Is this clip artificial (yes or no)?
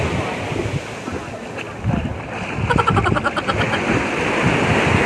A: no